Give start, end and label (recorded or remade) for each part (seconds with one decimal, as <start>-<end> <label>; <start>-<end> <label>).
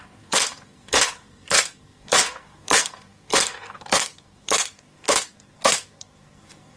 0.0-6.8 remade